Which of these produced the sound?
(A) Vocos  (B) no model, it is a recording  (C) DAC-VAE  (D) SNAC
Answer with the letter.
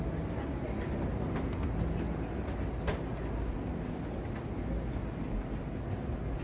B